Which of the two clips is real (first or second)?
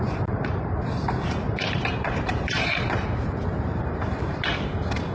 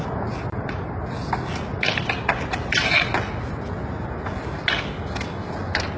second